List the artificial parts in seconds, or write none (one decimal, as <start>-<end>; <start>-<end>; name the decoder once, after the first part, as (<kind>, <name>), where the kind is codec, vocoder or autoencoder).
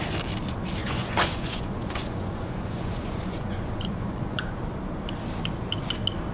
0.8-4.6 (vocoder, Vocos)